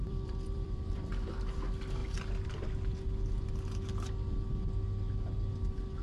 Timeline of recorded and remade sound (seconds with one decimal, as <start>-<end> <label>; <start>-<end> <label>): 0.0-1.1 remade; 1.1-6.0 recorded